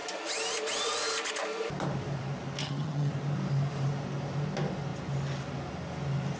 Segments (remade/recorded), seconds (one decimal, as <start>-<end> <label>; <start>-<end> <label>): 0.0-2.6 recorded; 2.6-3.1 remade; 3.1-6.4 recorded